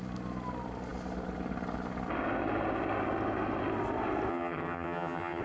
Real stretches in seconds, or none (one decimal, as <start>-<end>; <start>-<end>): 0.0-4.3